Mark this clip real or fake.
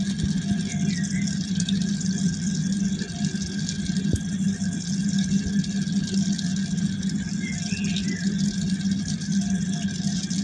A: real